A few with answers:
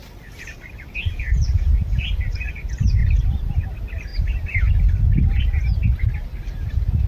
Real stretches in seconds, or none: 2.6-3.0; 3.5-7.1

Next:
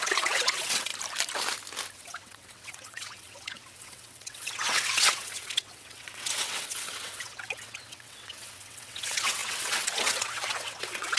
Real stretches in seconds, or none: 0.9-1.9

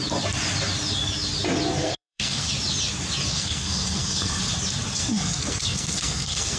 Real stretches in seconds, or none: 0.0-1.8; 2.5-3.3; 4.4-5.0

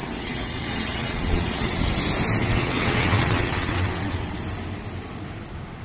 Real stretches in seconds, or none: 2.0-2.4; 4.4-5.8

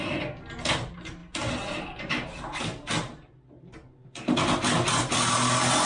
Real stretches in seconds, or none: 0.0-5.9

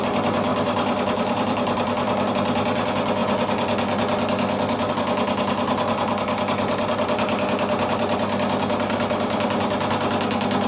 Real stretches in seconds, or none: 0.0-0.5; 2.3-10.7

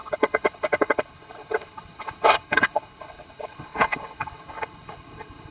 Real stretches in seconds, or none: none